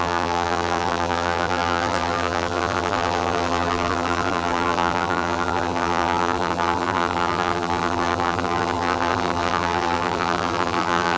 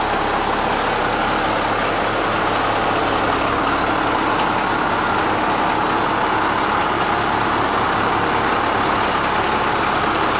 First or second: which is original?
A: second